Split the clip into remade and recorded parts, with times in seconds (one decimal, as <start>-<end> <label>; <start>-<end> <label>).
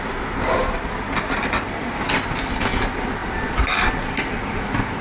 0.0-0.6 recorded; 0.6-1.9 remade; 1.9-3.2 recorded; 3.2-3.9 remade; 3.9-5.0 recorded